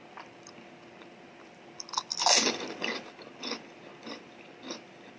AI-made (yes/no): no